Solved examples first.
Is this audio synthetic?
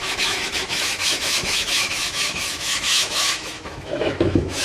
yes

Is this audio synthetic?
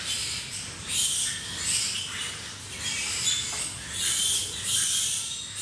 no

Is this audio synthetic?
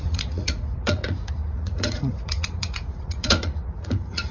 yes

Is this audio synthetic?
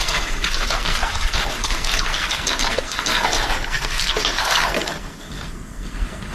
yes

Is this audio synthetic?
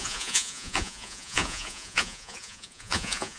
yes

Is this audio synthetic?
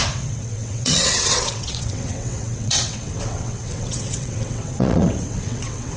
yes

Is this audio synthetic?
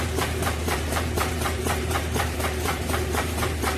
yes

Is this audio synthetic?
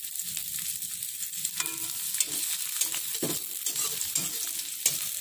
no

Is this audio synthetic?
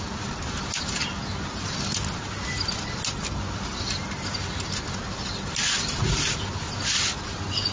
no